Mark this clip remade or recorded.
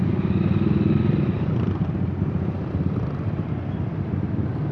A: recorded